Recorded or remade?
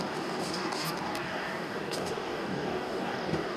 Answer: remade